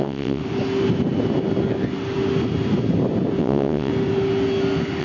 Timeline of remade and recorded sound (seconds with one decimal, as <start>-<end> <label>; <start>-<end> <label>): 0.0-0.4 remade; 0.4-3.4 recorded; 3.4-3.9 remade; 3.9-5.0 recorded

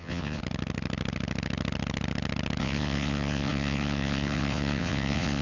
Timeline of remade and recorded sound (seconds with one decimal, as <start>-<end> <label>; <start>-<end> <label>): 0.0-0.4 remade; 0.4-2.6 recorded; 2.6-5.4 remade

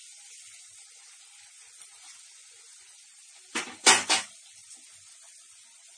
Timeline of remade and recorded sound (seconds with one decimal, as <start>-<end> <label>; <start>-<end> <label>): 0.0-6.0 recorded

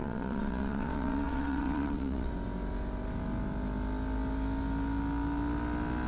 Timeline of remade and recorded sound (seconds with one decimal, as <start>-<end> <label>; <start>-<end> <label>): 0.0-2.3 remade; 2.3-6.1 recorded

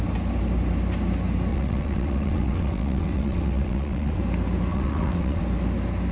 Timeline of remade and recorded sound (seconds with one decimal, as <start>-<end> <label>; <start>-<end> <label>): 0.0-1.5 recorded; 1.5-4.2 remade; 4.2-4.7 recorded; 4.7-5.4 remade; 5.4-6.1 recorded

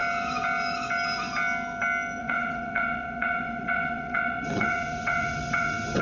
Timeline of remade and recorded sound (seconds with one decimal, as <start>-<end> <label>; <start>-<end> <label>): 0.0-2.2 recorded; 2.2-6.0 remade

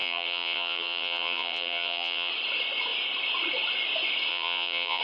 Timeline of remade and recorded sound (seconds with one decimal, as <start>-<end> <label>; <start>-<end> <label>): 0.0-2.3 remade; 2.3-4.3 recorded; 4.3-5.0 remade